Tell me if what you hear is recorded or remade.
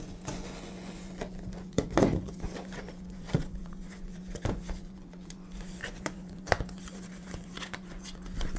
remade